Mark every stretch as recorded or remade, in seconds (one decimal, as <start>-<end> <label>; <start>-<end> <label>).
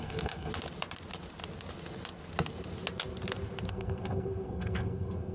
0.0-0.5 remade; 0.5-3.7 recorded; 3.7-5.3 remade